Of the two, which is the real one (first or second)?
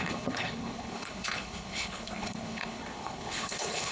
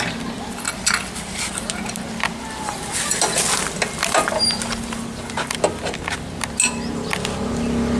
second